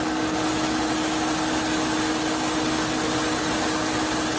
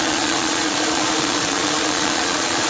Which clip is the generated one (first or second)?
second